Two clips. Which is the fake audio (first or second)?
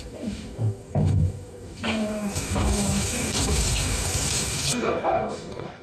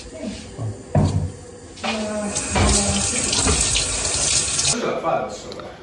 first